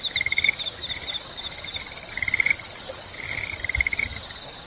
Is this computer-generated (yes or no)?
no